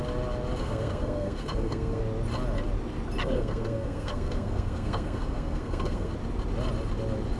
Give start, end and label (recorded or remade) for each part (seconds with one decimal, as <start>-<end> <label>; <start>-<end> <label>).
0.0-0.6 recorded; 0.6-2.0 remade; 2.0-3.2 recorded; 3.2-6.1 remade; 6.1-7.4 recorded